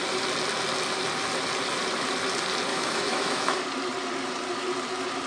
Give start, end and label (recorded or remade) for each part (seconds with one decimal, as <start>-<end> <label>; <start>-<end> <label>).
0.0-2.7 recorded; 2.7-3.6 remade; 3.6-5.3 recorded